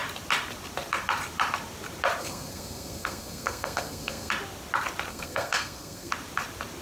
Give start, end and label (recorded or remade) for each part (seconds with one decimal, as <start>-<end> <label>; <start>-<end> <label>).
0.0-2.2 recorded; 2.2-4.3 remade; 4.3-5.1 recorded; 5.1-6.1 remade; 6.1-6.8 recorded